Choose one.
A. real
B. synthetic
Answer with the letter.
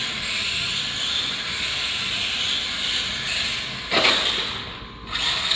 A